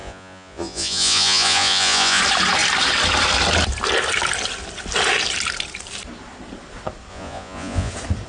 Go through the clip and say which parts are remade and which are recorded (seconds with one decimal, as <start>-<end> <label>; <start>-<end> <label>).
0.0-2.2 remade; 2.2-7.1 recorded; 7.1-7.9 remade; 7.9-8.3 recorded